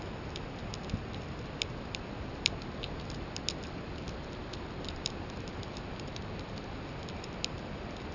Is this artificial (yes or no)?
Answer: no